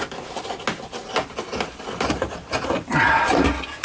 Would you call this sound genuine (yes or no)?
yes